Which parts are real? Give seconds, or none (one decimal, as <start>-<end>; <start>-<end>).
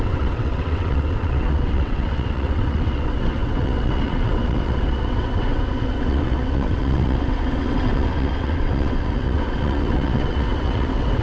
none